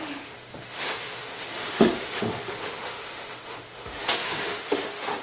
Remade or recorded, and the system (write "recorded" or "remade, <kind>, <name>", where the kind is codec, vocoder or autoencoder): remade, autoencoder, DAC-VAE